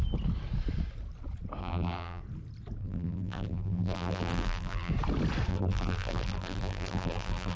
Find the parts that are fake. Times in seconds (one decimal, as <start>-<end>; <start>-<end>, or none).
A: 1.6-2.2; 2.8-4.9; 5.5-7.6